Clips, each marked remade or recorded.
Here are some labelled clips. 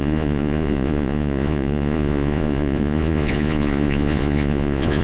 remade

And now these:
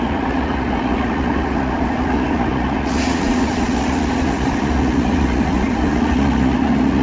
remade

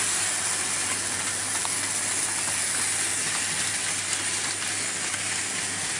recorded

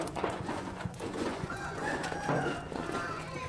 remade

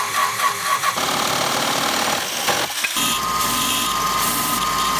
recorded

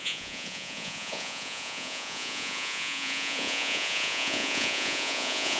remade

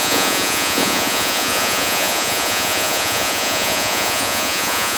remade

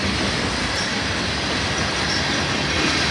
recorded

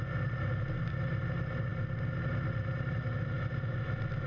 recorded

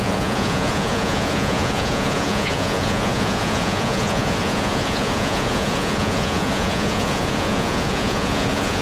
remade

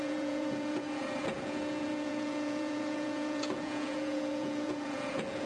remade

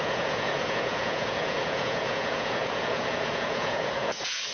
remade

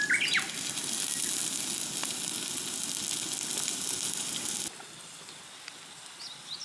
recorded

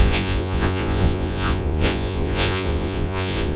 remade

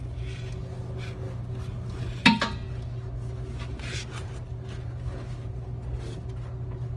recorded